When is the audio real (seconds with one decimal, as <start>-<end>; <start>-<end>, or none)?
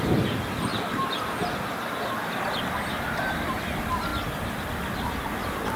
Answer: 0.0-5.8